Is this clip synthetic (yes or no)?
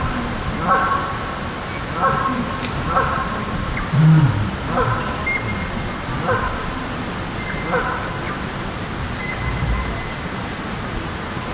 no